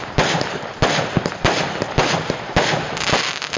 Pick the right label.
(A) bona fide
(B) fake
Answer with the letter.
A